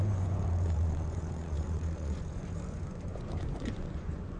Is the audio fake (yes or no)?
yes